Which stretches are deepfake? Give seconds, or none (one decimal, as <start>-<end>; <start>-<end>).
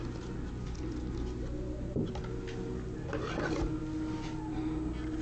none